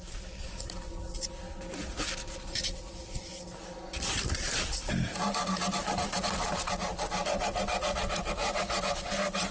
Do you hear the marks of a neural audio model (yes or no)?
no